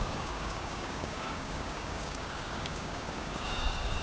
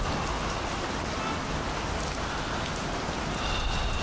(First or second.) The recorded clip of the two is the second